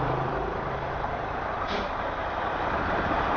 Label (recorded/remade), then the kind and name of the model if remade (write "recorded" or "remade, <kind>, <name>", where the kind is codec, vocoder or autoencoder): remade, vocoder, BigVGAN v2